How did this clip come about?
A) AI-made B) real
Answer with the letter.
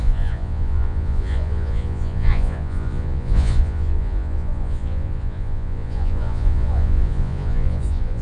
A